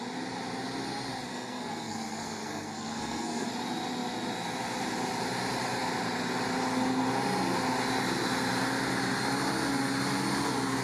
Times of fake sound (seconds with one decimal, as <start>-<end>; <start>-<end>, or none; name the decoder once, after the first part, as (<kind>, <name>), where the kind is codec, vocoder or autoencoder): 1.3-3.5 (codec, SNAC)